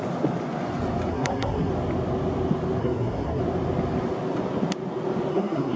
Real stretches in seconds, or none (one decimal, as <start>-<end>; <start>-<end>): 0.0-1.1; 1.7-2.8; 3.4-5.3